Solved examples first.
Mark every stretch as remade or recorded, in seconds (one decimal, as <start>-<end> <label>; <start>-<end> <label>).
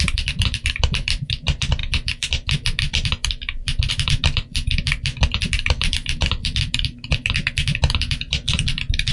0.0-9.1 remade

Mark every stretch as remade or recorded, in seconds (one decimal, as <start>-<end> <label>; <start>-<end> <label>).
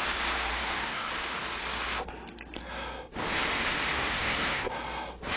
0.0-0.5 recorded; 0.5-1.1 remade; 1.1-3.9 recorded; 3.9-4.7 remade; 4.7-5.4 recorded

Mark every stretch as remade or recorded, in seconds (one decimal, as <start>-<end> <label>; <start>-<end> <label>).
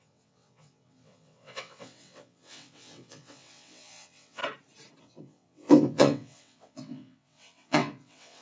0.0-4.4 remade; 4.4-5.0 recorded; 5.0-8.4 remade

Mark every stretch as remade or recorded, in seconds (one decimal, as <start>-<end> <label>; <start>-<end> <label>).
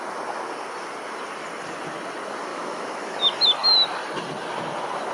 0.0-2.5 recorded; 2.5-3.2 remade; 3.2-5.1 recorded